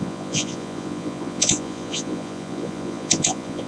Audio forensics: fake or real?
fake